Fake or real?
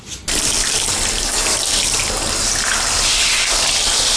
real